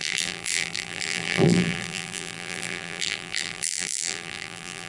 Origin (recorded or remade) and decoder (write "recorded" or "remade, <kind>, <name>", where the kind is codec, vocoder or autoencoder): remade, vocoder, BigVGAN v2